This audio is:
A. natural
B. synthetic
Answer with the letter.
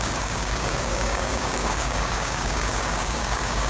B